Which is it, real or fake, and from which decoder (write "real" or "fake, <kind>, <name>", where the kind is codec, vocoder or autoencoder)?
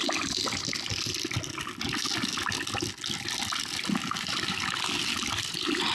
real